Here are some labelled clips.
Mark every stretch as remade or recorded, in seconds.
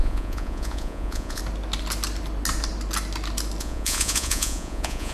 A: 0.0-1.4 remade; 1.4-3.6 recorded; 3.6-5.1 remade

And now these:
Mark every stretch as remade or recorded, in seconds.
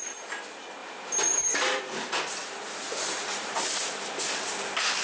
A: 0.0-0.8 recorded; 0.8-1.8 remade; 1.8-2.4 recorded; 2.4-3.9 remade; 3.9-5.0 recorded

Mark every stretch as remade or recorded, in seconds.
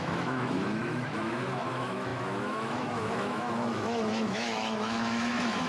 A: 0.0-5.7 remade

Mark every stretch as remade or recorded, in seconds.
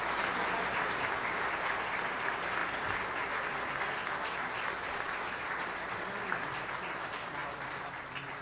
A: 0.0-8.4 recorded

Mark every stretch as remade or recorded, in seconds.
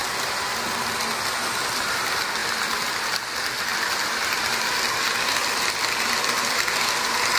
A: 0.0-1.0 remade; 1.0-7.4 recorded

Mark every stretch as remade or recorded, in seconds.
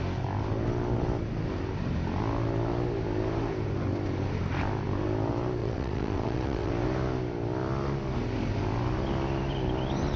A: 0.0-5.6 recorded; 5.6-6.7 remade; 6.7-10.2 recorded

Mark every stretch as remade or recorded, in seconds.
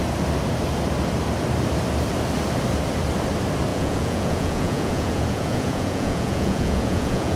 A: 0.0-3.7 recorded; 3.7-7.4 remade